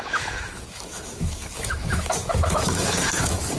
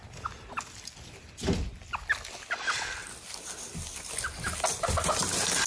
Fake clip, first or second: first